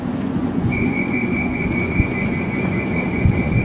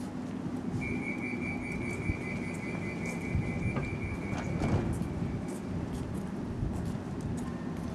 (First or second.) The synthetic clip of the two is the first